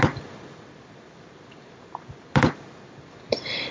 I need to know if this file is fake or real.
real